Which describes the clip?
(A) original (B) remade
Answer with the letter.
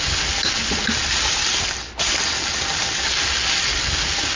A